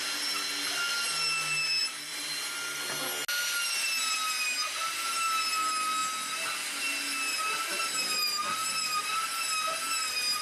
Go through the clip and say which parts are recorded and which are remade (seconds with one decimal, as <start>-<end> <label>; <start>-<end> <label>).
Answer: 0.0-1.8 recorded; 1.8-2.4 remade; 2.4-8.6 recorded; 8.6-9.2 remade; 9.2-10.4 recorded